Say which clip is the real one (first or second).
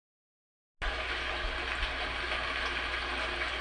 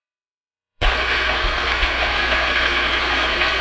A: first